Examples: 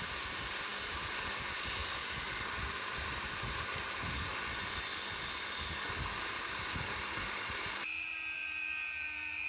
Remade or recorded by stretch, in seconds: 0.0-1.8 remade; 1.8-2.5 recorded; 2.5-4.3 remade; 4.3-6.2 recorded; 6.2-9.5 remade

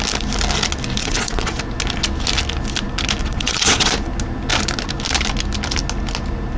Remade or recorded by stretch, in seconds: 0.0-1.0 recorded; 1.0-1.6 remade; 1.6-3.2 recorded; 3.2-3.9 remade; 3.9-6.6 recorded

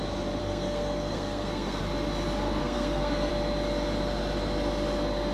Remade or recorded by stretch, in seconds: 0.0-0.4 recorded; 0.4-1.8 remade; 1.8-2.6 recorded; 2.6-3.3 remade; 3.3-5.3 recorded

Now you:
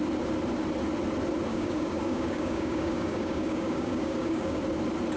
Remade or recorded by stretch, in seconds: 0.0-1.5 recorded; 1.5-4.6 remade; 4.6-5.2 recorded